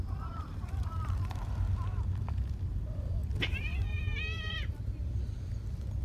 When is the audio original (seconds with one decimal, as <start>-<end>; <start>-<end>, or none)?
3.2-6.0